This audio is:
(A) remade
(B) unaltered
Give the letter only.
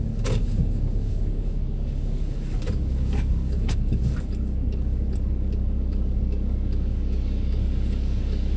A